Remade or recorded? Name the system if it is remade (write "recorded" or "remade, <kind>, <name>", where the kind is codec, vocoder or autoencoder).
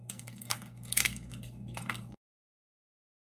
remade, codec, SNAC